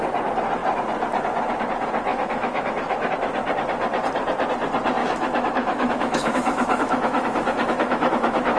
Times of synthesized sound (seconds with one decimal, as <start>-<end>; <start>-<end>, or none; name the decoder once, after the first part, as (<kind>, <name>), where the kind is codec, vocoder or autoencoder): 2.1-3.1 (autoencoder, DAC-VAE); 5.0-8.6